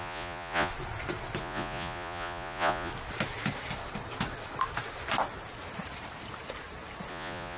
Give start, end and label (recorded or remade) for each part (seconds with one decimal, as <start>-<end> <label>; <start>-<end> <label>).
0.0-0.7 remade; 0.7-1.4 recorded; 1.4-2.9 remade; 2.9-7.1 recorded; 7.1-7.6 remade